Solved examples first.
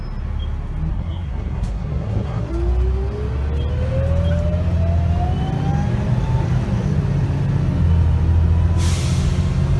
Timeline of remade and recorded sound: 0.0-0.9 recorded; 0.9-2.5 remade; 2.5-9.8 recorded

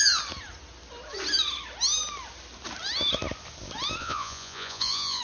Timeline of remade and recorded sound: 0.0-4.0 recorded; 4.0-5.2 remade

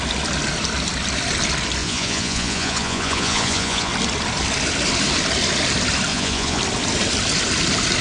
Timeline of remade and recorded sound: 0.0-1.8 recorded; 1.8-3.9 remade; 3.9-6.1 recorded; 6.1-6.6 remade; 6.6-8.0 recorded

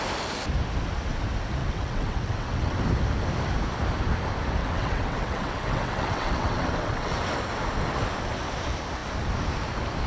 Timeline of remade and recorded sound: 0.0-1.6 recorded; 1.6-2.8 remade; 2.8-4.6 recorded; 4.6-7.2 remade; 7.2-10.1 recorded